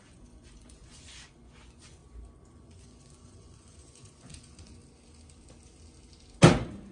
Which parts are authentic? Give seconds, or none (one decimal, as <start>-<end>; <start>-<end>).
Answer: 2.0-2.5; 4.8-6.9